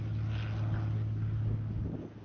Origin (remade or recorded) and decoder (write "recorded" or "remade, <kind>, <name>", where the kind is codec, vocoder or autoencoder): recorded